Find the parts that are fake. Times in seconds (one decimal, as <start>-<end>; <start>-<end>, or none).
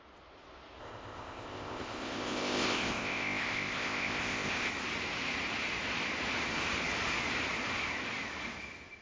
0.8-4.7